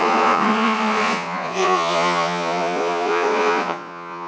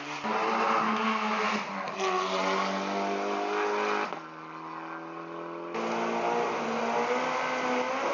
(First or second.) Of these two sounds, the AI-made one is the first